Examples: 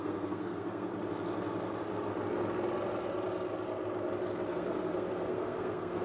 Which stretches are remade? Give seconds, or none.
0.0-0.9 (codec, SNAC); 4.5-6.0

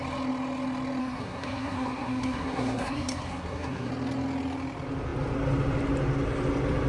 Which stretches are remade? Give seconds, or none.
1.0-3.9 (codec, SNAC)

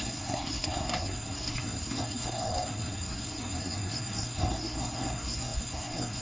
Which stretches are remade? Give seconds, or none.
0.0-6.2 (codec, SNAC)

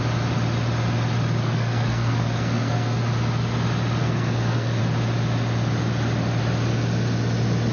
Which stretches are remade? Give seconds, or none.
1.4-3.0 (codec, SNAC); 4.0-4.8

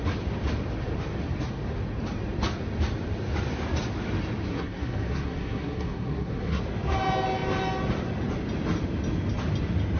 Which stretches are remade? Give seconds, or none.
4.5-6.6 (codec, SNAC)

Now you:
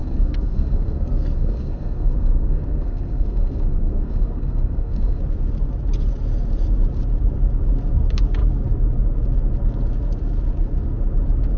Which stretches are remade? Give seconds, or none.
0.0-5.2 (codec, SNAC)

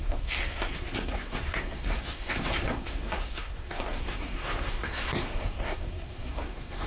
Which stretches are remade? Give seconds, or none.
0.0-6.9 (codec, SNAC)

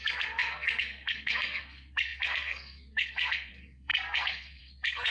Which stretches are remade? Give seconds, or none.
0.0-5.1 (codec, SNAC)